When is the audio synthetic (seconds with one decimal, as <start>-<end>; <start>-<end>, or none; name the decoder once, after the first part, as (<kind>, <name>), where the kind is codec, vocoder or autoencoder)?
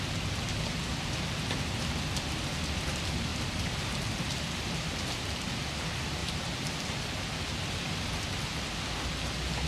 3.3-5.1 (vocoder, BigVGAN v2); 6.2-7.0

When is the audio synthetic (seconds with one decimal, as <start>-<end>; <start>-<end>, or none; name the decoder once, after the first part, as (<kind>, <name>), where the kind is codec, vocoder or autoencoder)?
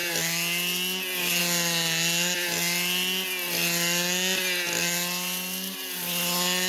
none